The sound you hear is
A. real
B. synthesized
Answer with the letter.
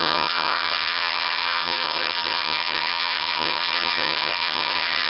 B